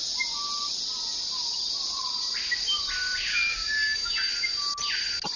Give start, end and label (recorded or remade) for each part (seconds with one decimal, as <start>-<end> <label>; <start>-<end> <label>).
0.0-3.3 recorded; 3.3-4.3 remade; 4.3-5.4 recorded